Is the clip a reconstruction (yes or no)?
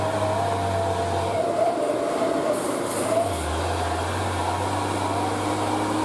no